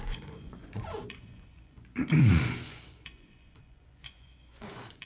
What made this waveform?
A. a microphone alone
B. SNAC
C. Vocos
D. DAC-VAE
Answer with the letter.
C